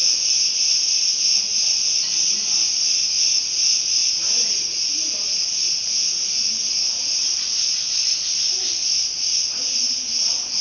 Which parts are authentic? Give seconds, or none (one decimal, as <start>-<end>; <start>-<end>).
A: 0.0-4.0; 5.9-7.2; 9.1-10.6

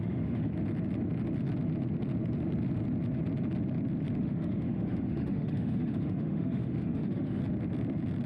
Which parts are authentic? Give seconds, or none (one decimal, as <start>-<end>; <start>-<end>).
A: 0.5-4.2; 7.4-8.3